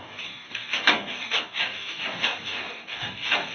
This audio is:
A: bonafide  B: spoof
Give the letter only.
B